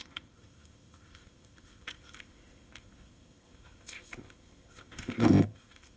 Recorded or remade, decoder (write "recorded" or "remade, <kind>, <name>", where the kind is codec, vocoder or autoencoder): remade, codec, ZipCodec